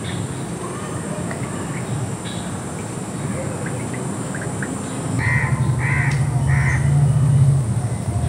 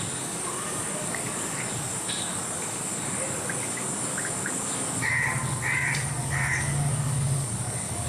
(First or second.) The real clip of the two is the first